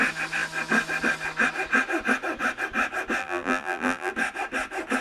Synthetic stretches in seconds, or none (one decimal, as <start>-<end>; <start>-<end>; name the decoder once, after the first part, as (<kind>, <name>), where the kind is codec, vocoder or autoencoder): 3.2-4.1 (vocoder, BigVGAN v2)